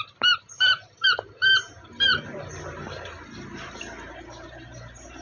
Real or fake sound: fake